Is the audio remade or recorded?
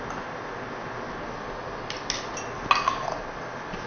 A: recorded